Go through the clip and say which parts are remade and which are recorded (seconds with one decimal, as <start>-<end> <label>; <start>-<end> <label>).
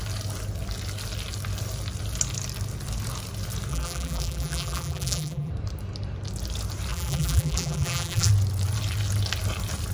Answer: 0.0-3.7 recorded; 3.7-5.5 remade; 5.5-6.9 recorded; 6.9-8.3 remade; 8.3-9.9 recorded